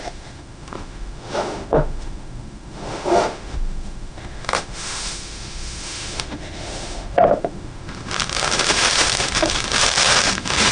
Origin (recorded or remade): remade